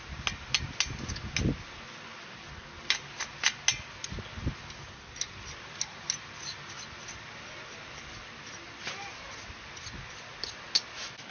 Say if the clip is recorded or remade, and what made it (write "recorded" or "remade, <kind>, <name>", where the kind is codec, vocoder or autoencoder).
recorded